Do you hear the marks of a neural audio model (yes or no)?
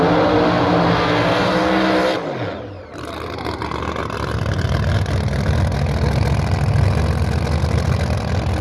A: no